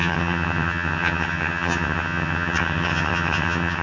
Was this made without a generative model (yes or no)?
no